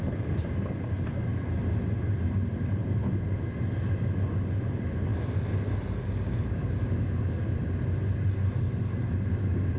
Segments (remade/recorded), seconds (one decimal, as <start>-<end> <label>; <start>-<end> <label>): 0.0-9.8 recorded